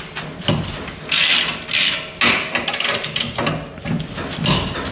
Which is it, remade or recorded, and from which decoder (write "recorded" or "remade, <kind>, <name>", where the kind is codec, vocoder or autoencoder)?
recorded